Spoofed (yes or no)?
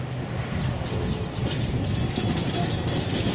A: no